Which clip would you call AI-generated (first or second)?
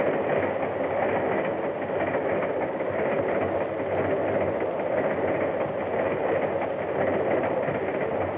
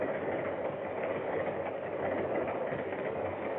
second